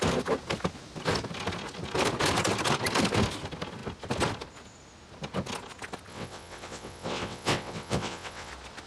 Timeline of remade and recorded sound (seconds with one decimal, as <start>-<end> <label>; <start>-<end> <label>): 0.0-6.1 recorded; 6.1-8.5 remade; 8.5-8.9 recorded